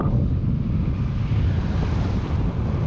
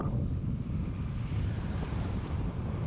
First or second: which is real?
first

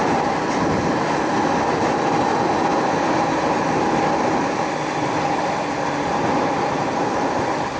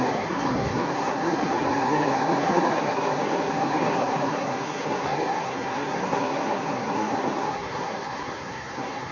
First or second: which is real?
first